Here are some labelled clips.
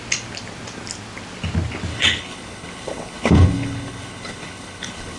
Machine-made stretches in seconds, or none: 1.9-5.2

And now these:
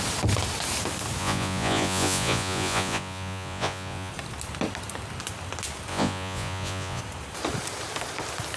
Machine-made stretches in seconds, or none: 1.2-4.1; 5.9-7.0

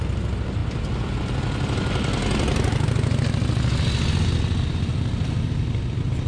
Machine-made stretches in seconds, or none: none

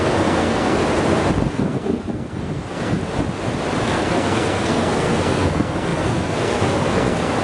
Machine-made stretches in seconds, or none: 0.0-0.8; 1.5-3.0; 3.8-7.4

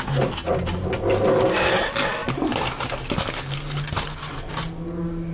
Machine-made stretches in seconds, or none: none

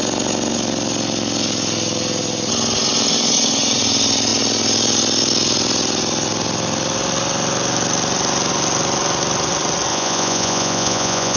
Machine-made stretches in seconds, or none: 9.9-11.4

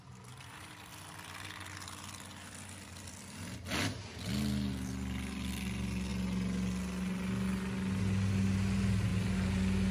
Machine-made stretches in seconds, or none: none